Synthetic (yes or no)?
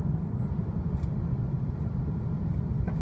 no